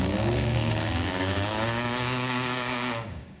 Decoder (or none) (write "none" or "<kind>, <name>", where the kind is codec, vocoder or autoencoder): codec, DAC